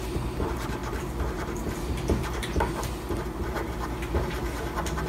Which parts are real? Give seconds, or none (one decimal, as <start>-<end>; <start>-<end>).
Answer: 0.0-5.1